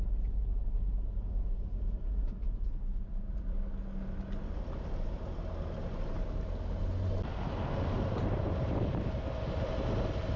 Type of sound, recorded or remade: recorded